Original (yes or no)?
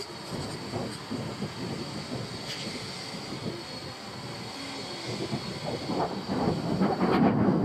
yes